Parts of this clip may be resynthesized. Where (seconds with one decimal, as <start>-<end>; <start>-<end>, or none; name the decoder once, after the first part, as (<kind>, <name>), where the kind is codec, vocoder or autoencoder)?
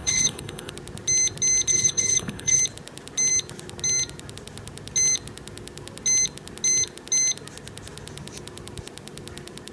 0.0-0.7 (codec, HILCodec); 1.7-2.6